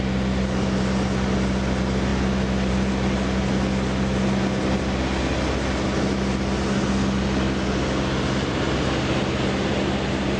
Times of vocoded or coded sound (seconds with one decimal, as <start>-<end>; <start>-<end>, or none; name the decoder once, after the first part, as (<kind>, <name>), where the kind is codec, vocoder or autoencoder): none